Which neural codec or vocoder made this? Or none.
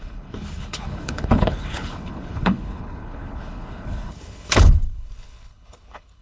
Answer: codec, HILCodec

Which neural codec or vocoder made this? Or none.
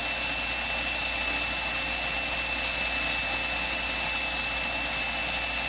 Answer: none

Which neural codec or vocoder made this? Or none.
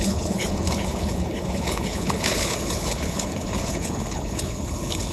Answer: codec, HILCodec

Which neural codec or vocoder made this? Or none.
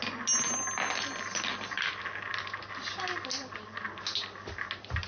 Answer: none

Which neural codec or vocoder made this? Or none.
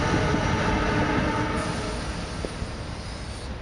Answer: none